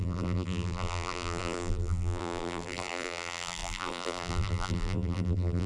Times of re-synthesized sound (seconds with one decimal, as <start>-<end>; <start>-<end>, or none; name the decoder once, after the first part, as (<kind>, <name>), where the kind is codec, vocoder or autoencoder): 0.0-5.7 (vocoder, BigVGAN v2)